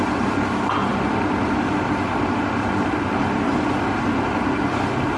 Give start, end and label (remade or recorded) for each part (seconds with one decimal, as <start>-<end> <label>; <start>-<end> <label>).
0.0-0.9 recorded; 0.9-4.0 remade; 4.0-5.2 recorded